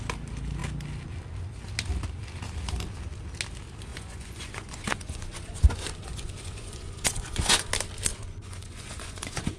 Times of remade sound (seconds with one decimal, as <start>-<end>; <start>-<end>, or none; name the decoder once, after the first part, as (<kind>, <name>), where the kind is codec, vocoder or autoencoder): 3.9-7.7 (vocoder, Vocos); 8.1-9.6